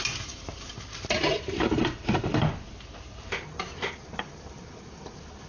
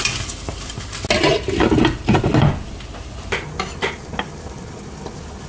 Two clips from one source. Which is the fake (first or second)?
first